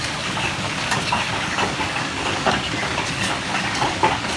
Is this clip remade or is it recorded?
remade